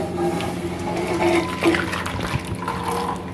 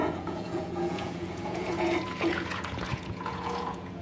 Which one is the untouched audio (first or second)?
first